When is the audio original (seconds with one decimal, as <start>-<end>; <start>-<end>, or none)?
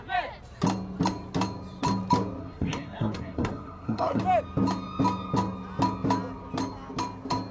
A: 0.0-2.4; 4.2-7.5